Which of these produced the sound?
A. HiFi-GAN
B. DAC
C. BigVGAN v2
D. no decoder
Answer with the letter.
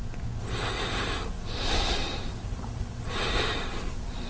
D